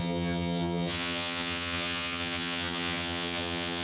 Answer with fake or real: fake